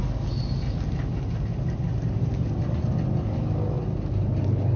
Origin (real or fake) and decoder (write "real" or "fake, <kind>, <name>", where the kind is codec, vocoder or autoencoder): real